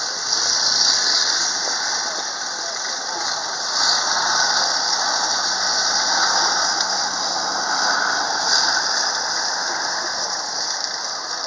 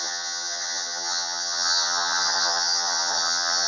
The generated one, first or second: second